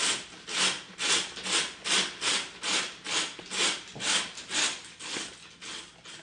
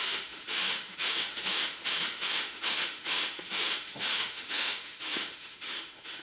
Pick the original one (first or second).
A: first